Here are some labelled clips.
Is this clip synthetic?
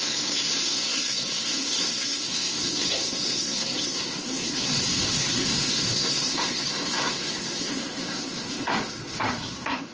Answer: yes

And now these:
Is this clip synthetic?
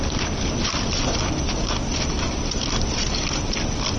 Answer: no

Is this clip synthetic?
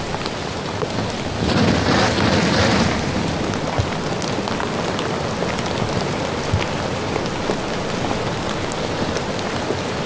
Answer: no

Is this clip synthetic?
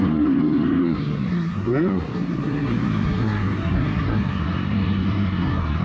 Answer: yes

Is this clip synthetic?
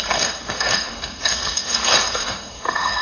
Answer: yes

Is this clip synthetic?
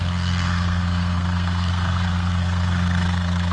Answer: yes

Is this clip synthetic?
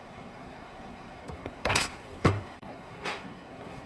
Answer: yes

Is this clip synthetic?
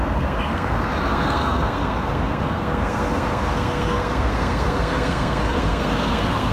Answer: yes